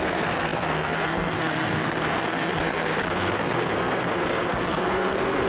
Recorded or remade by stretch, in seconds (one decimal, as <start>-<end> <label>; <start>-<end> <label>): 0.0-5.5 remade